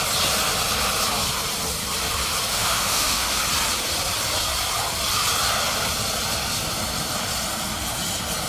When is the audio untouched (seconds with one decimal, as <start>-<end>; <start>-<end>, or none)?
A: 0.0-2.5; 3.4-8.5